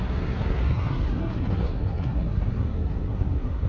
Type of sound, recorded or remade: remade